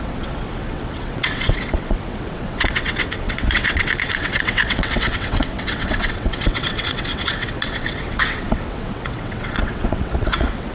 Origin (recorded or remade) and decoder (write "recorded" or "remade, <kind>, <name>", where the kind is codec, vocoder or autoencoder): remade, vocoder, WaveNeXt